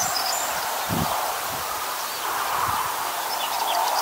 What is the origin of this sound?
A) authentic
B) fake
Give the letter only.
B